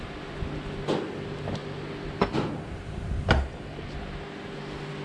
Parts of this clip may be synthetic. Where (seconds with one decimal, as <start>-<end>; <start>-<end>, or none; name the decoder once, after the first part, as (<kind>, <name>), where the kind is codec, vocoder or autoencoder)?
none